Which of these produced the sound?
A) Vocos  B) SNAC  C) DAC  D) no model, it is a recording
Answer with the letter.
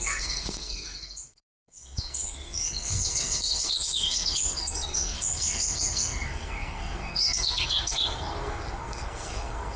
B